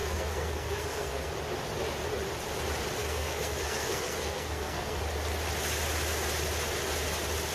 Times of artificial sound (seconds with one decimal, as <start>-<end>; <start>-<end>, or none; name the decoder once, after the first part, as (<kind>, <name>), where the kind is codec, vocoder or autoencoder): 0.0-1.3 (codec, SNAC); 3.0-5.0